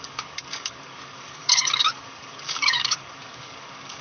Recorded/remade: remade